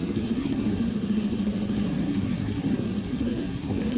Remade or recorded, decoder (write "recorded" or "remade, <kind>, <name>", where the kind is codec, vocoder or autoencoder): remade, codec, SNAC